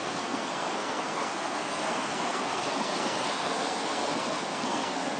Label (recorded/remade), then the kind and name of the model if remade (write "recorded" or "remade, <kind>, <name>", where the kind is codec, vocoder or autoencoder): remade, codec, SNAC